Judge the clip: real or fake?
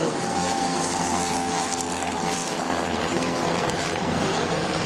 fake